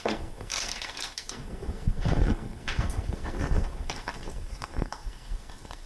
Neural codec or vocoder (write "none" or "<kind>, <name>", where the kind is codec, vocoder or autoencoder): codec, SNAC